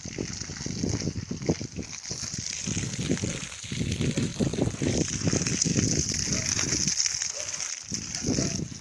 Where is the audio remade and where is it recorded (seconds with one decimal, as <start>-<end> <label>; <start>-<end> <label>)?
0.0-8.8 recorded